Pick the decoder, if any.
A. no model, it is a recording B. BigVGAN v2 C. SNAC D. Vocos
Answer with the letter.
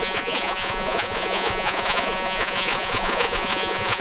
D